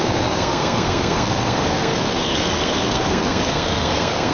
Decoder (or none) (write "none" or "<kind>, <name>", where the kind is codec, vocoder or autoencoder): codec, SNAC